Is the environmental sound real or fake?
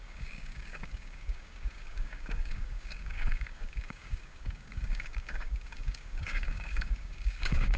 fake